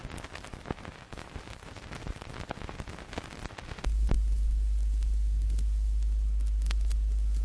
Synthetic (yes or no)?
no